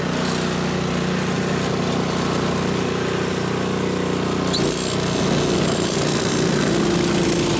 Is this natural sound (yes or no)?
yes